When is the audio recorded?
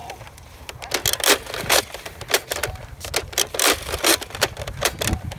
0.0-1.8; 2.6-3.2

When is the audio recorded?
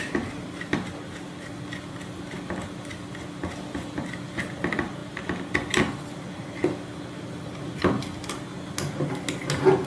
0.0-9.9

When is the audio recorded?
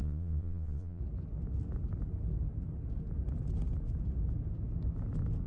1.0-5.5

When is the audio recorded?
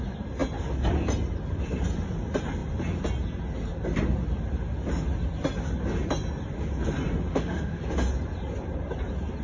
0.0-7.3; 7.8-9.4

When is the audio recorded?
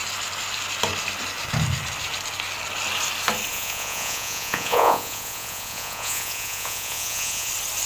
0.0-3.5; 7.5-7.9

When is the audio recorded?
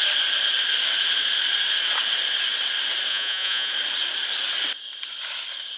0.0-3.1; 3.7-5.8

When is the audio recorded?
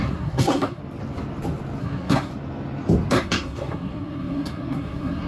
0.8-1.8; 2.3-3.1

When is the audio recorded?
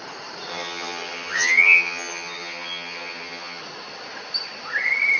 0.0-0.5; 3.6-5.2